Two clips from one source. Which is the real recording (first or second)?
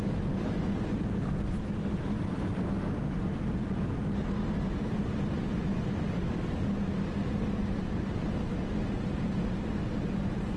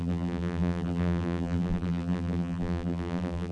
first